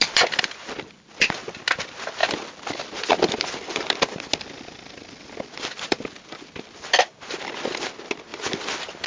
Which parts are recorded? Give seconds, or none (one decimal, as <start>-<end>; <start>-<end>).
0.0-9.1